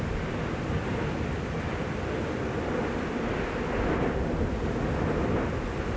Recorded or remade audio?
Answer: recorded